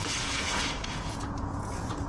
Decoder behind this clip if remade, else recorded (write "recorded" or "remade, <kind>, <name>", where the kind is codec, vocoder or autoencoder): remade, vocoder, Vocos